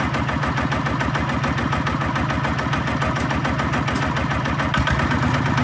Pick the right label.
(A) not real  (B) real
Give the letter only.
B